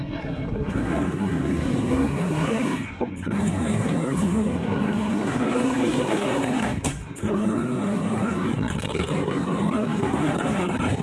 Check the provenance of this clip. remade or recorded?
remade